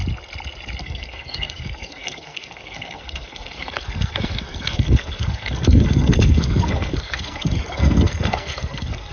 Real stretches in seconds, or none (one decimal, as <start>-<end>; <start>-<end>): 0.0-0.8